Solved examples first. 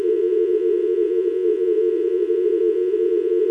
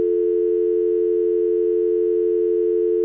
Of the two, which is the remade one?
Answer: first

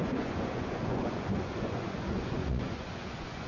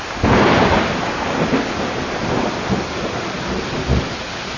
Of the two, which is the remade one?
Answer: first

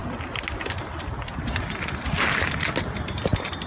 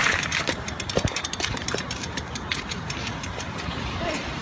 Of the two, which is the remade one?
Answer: second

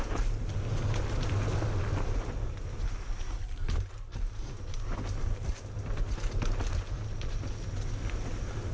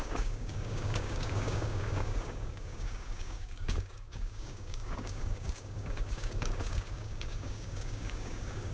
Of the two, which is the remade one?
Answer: second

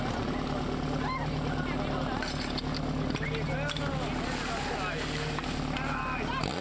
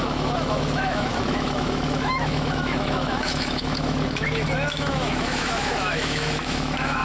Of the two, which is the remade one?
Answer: second